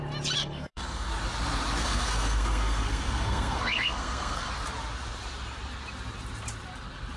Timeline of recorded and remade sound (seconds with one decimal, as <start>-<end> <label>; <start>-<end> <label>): 0.0-0.4 recorded; 0.4-1.1 remade; 1.1-1.8 recorded; 1.8-4.5 remade; 4.5-7.2 recorded